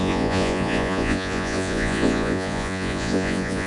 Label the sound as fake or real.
fake